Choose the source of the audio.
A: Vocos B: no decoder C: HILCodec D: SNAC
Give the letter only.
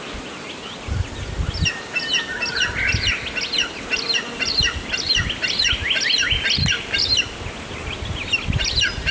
B